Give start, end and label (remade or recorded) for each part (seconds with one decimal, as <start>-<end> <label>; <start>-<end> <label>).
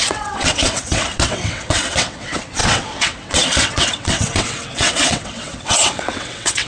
0.0-6.7 remade